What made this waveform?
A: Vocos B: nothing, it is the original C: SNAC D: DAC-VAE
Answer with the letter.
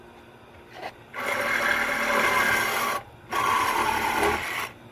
B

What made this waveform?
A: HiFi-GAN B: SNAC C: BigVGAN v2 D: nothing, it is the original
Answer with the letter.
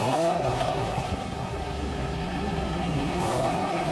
B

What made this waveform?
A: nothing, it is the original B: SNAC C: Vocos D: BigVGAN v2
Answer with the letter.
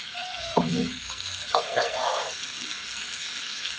B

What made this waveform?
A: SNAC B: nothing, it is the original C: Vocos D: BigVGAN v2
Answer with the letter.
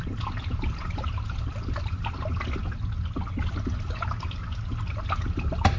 B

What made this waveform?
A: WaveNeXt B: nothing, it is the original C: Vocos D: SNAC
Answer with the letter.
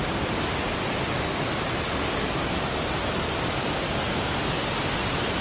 B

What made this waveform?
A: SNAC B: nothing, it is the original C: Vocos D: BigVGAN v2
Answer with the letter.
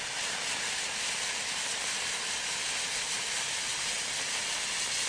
B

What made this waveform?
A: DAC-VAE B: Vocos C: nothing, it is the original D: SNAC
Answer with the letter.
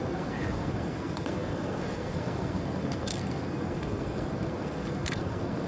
D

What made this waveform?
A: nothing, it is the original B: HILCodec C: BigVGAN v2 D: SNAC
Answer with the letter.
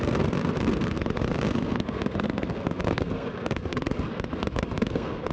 D